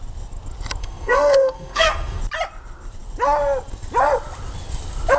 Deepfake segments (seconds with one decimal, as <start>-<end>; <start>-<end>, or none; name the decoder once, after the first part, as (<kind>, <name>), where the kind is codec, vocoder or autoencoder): 0.8-2.2 (codec, SNAC)